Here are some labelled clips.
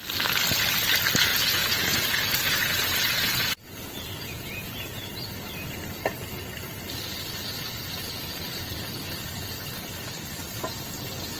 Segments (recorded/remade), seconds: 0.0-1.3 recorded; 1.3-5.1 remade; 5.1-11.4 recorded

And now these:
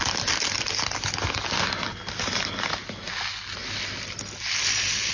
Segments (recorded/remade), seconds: 0.0-5.1 recorded